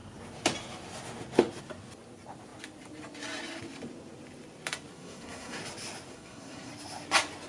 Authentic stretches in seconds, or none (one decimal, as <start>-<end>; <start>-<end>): 0.0-4.9; 5.6-6.1; 6.7-7.5